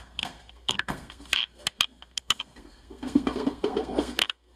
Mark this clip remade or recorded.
remade